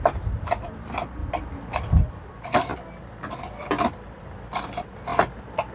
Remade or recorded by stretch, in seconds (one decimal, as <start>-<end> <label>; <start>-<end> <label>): 0.0-1.2 remade; 1.2-2.1 recorded; 2.1-2.7 remade; 2.7-3.6 recorded; 3.6-5.1 remade; 5.1-5.7 recorded